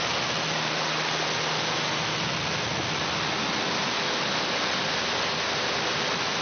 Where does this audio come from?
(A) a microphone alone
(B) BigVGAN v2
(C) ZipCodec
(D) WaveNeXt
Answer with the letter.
A